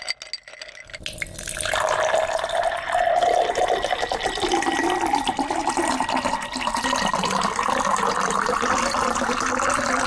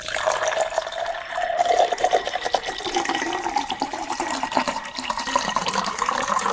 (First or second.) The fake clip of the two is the second